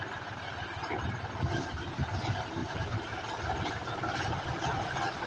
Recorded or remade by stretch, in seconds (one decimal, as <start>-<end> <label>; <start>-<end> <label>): 0.0-5.3 recorded